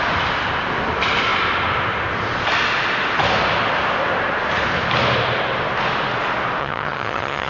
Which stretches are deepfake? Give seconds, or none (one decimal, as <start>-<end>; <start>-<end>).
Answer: 6.6-7.5